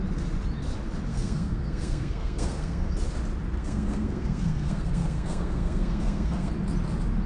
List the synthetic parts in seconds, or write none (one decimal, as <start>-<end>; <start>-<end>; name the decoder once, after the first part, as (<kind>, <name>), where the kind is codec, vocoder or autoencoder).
1.1-2.9 (codec, SNAC); 3.6-6.5